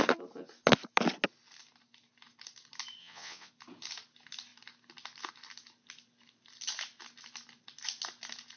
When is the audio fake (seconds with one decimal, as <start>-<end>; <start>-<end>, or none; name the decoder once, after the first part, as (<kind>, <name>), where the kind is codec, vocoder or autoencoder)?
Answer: 3.0-3.5 (vocoder, WaveNeXt)